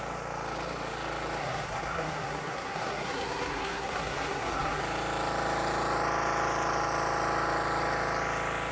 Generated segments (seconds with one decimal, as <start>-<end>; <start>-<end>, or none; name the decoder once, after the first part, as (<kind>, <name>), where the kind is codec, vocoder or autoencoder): 1.4-4.8 (codec, SNAC)